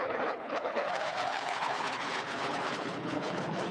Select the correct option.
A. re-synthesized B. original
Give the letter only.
A